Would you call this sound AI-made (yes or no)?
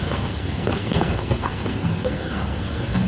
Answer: yes